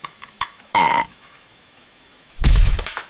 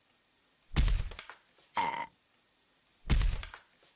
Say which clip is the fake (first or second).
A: first